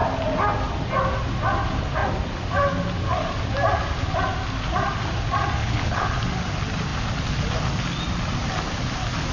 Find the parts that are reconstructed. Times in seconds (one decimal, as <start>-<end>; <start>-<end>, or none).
5.6-6.1